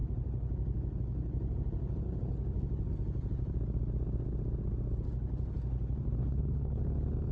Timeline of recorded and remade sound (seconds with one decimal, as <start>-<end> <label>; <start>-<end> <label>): 0.0-6.2 recorded; 6.2-6.8 remade; 6.8-7.3 recorded